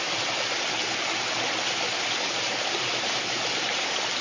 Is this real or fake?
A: real